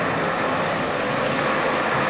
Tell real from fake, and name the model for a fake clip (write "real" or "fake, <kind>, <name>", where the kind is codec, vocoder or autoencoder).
real